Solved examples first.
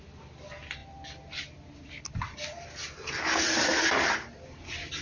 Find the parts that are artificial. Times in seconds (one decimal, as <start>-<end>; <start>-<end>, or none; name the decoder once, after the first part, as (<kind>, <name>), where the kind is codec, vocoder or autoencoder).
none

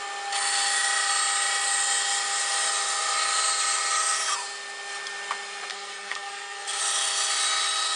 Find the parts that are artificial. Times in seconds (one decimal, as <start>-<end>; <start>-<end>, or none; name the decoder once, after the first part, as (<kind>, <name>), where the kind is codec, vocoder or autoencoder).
5.7-6.8 (codec, SNAC)

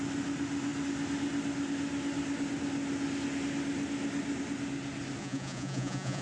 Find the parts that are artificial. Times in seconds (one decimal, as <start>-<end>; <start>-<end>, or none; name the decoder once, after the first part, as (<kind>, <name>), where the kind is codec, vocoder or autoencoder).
5.2-6.2 (vocoder, Vocos)